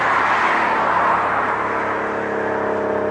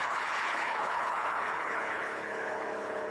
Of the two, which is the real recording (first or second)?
first